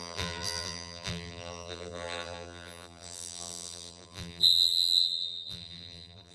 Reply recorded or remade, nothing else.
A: remade